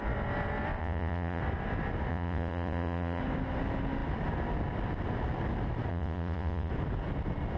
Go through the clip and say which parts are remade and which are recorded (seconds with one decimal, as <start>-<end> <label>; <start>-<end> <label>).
0.0-0.8 recorded; 0.8-1.4 remade; 1.4-2.1 recorded; 2.1-3.2 remade; 3.2-5.9 recorded; 5.9-6.7 remade; 6.7-7.6 recorded